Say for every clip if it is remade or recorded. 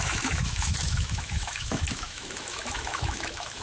remade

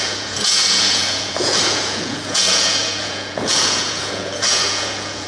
remade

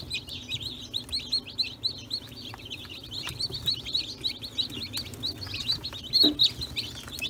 recorded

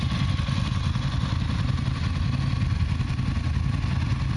recorded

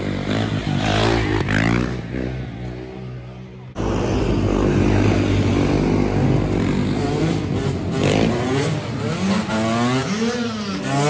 recorded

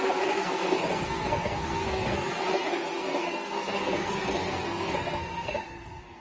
remade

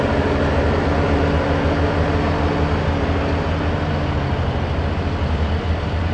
recorded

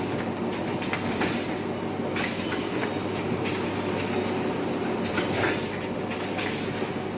recorded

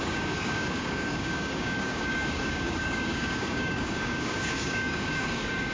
remade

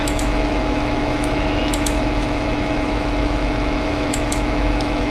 remade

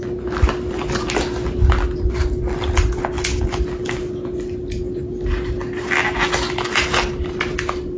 recorded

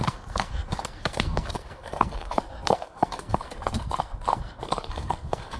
remade